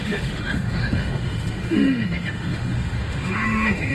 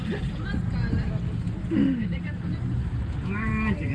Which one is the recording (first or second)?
second